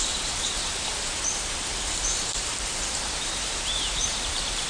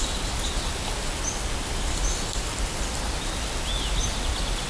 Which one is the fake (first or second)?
first